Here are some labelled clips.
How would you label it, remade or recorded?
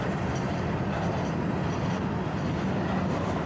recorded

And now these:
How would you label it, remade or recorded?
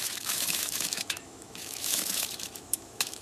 remade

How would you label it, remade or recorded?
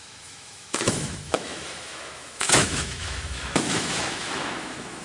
remade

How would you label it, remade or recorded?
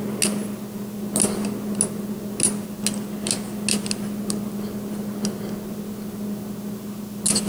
recorded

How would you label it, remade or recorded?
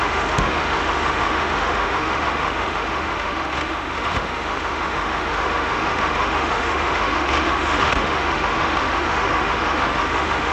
remade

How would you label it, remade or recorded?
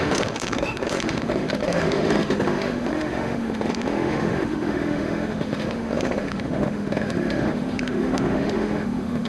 remade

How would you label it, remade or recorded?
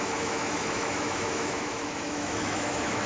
remade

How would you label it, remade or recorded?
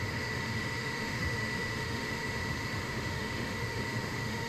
remade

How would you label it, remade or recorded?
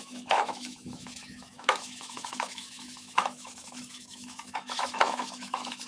remade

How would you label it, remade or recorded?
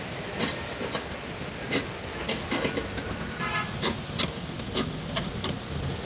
recorded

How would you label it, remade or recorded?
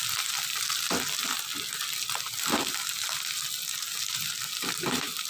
recorded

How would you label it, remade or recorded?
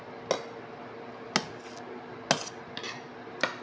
recorded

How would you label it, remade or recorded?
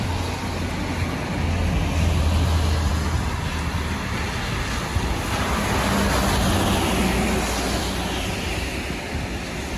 recorded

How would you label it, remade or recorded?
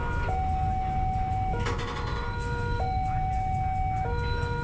recorded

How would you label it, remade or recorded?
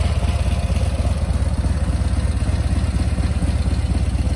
recorded